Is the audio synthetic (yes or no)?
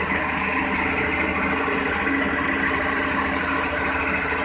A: no